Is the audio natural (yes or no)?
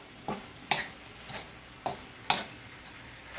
yes